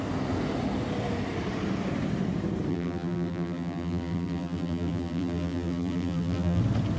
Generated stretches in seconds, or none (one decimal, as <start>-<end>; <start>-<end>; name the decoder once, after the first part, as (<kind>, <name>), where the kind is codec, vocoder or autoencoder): 2.7-6.6 (vocoder, BigVGAN v2)